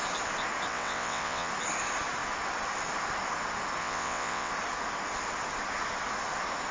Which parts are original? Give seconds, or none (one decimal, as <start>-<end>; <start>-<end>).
0.0-0.7; 1.5-3.8; 4.5-6.7